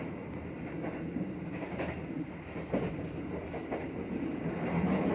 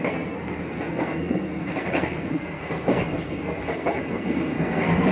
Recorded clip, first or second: first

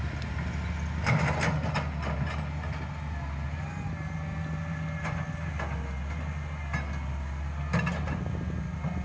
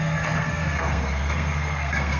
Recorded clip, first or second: first